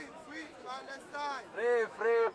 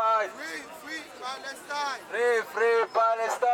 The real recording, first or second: second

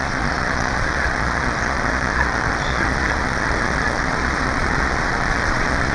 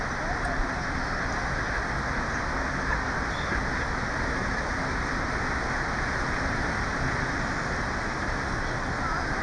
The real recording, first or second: second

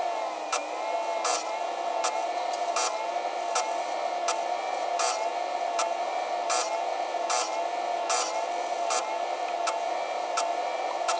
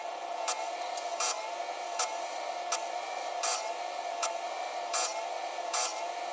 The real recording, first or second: first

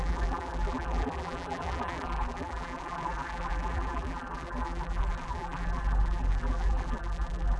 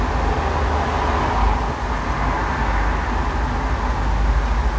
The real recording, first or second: second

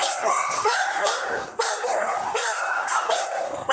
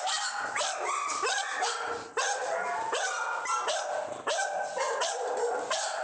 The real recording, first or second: second